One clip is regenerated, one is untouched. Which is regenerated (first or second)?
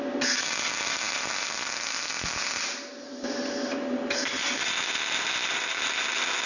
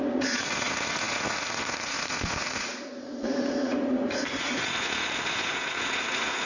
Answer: second